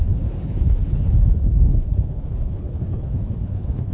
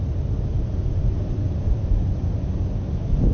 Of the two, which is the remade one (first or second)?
first